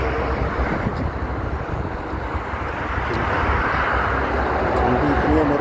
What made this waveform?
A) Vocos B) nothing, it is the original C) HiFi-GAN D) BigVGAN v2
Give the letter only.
B